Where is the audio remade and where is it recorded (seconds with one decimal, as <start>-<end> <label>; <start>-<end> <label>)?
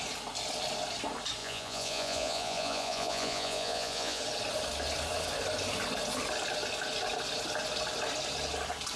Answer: 0.0-1.4 recorded; 1.4-4.2 remade; 4.2-9.0 recorded